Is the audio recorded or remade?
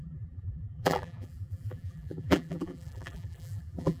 remade